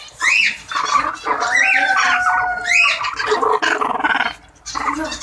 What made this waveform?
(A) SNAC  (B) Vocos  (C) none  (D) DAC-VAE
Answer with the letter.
C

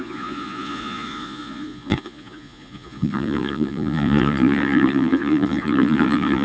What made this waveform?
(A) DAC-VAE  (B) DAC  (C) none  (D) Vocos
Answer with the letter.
D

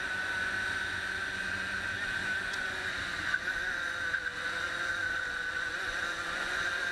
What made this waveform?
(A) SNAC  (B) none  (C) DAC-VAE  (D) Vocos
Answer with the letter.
D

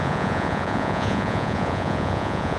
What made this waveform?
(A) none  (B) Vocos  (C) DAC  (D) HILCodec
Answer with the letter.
B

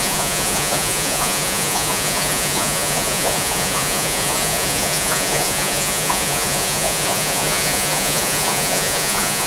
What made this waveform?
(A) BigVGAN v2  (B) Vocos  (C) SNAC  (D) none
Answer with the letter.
B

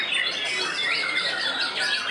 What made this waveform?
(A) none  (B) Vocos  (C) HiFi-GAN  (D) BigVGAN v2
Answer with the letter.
A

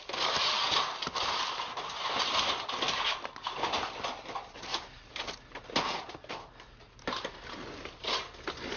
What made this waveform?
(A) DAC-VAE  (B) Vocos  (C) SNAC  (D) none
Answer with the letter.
D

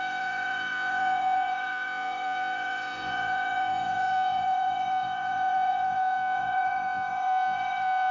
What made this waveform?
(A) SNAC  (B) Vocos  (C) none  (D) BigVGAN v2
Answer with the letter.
B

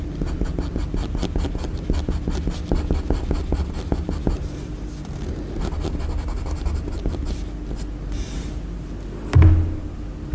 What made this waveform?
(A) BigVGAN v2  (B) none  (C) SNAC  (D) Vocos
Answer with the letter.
B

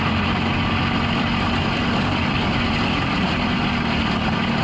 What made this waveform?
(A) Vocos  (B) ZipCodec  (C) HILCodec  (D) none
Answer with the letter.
D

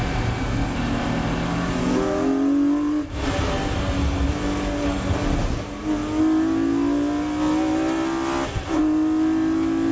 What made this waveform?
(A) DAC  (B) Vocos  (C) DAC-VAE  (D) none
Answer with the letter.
D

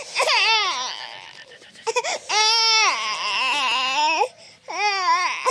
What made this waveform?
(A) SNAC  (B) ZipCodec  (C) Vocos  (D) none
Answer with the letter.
D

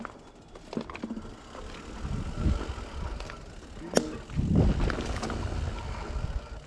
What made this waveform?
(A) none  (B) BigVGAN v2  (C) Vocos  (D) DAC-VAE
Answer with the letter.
A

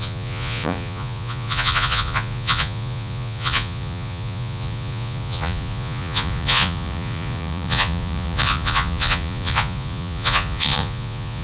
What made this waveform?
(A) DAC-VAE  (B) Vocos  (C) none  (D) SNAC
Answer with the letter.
B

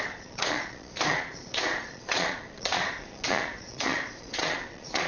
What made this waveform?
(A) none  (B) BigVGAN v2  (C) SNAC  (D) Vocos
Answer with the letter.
D